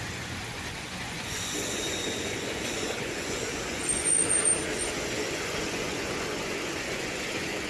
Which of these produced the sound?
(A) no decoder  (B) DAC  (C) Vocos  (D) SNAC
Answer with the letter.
C